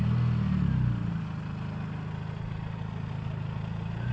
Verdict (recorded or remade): recorded